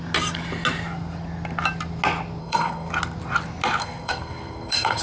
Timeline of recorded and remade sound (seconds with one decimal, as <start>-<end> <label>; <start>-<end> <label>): 0.0-2.4 recorded; 2.4-2.9 remade; 2.9-3.8 recorded; 3.8-5.0 remade